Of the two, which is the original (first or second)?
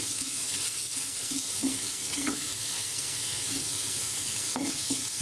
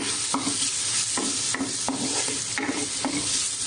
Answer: second